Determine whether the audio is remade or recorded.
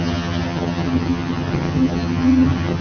remade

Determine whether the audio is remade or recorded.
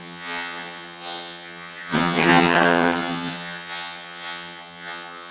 remade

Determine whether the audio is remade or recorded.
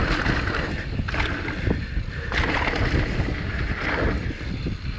recorded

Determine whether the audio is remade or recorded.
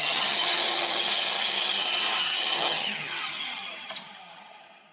remade